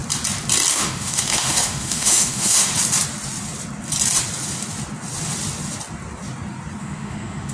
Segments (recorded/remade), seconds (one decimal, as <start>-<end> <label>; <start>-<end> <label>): 0.0-0.7 recorded; 0.7-2.7 remade; 2.7-6.8 recorded; 6.8-7.5 remade